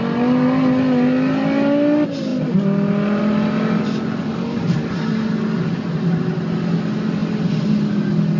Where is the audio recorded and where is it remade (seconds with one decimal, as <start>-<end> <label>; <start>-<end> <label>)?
0.0-8.4 recorded